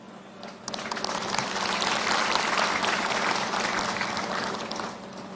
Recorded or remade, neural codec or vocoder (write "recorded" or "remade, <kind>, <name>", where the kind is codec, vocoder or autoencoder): recorded